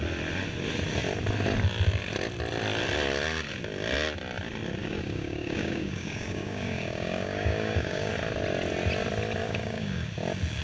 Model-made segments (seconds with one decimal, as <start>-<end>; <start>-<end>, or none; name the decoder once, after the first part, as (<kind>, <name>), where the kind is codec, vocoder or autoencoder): 4.8-8.1 (codec, DAC); 9.4-10.1